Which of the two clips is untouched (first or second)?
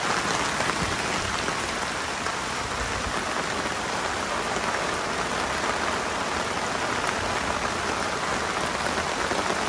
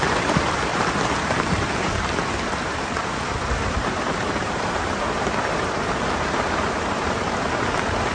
first